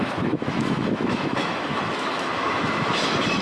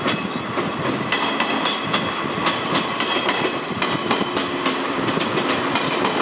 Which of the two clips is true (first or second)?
second